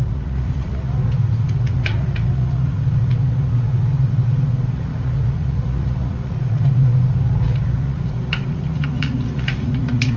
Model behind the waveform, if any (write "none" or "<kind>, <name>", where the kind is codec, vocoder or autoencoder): vocoder, Vocos